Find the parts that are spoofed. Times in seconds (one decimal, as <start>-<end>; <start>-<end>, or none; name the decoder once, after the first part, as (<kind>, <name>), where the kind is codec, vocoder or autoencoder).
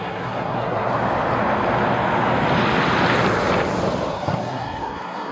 0.0-0.9 (codec, SNAC); 4.1-5.3